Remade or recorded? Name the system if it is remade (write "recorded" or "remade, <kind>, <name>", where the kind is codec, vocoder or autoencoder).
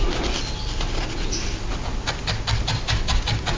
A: recorded